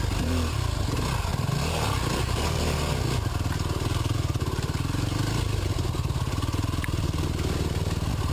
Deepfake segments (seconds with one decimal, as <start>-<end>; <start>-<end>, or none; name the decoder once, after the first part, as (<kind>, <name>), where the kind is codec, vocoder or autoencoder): none